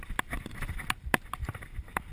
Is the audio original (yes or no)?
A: no